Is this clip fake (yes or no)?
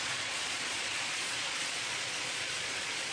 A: yes